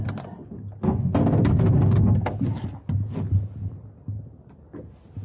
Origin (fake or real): real